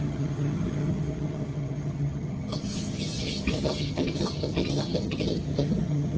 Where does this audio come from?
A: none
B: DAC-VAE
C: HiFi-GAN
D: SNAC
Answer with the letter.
C